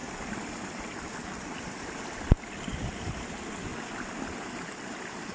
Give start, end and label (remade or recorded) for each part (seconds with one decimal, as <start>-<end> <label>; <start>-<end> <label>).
0.0-5.3 recorded

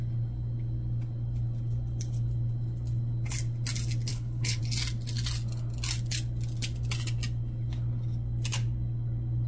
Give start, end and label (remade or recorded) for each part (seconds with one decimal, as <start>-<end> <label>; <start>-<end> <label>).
0.0-4.1 recorded; 4.1-4.6 remade; 4.6-9.5 recorded

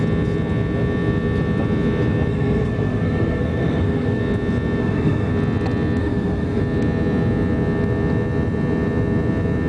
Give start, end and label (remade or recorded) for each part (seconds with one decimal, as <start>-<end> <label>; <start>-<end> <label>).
0.0-2.3 recorded; 2.3-4.2 remade; 4.2-4.8 recorded; 4.8-5.3 remade; 5.3-6.0 recorded; 6.0-6.6 remade; 6.6-9.7 recorded

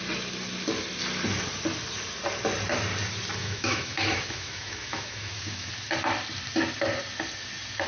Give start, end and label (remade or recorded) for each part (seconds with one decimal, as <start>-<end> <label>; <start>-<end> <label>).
0.0-3.4 recorded; 3.4-5.7 remade; 5.7-7.9 recorded